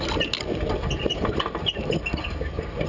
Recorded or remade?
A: recorded